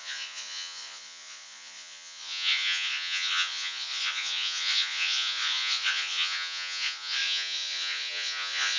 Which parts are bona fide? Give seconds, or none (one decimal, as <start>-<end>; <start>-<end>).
none